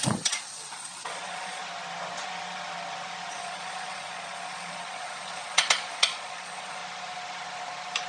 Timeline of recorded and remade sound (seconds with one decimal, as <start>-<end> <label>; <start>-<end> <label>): 0.0-1.6 remade; 1.6-3.3 recorded; 3.3-6.8 remade; 6.8-8.1 recorded